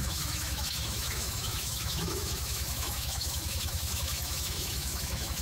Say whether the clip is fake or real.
fake